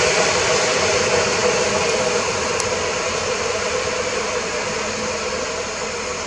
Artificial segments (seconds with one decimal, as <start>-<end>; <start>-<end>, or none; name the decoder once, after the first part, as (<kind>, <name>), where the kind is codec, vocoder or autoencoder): none